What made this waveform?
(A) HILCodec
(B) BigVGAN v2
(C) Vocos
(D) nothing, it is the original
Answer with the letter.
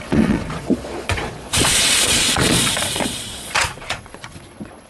C